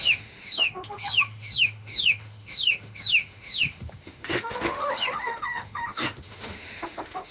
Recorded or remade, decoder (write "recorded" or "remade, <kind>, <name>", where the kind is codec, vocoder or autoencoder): remade, autoencoder, DAC-VAE